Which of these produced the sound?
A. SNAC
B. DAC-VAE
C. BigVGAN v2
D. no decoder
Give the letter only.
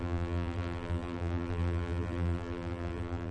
C